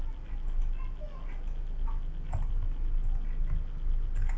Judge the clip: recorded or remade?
recorded